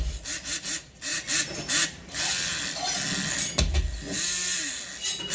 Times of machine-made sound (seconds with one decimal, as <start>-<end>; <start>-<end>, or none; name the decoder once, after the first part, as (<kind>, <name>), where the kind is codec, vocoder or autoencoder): 1.1-2.2 (vocoder, BigVGAN v2)